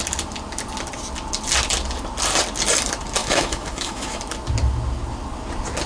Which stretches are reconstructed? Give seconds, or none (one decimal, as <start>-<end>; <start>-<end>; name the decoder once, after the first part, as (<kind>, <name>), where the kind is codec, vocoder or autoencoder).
3.2-4.2 (autoencoder, DAC-VAE)